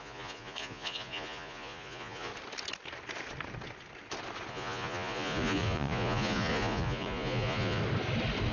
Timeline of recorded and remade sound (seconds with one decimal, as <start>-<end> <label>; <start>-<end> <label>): 0.0-2.3 remade; 2.3-4.5 recorded; 4.5-7.8 remade; 7.8-8.5 recorded